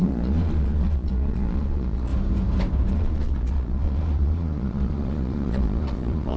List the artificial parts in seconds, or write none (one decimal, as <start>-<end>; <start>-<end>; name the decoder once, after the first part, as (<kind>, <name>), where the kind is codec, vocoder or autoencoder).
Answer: 0.0-2.1 (vocoder, Vocos); 2.9-6.4